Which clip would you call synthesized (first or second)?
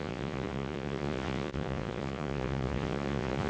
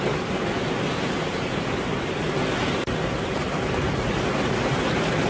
first